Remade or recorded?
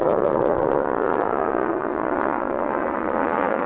remade